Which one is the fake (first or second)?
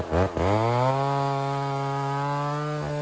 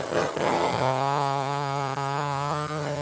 second